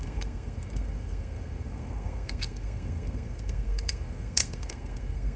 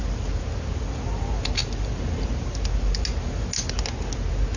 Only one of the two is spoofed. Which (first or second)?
first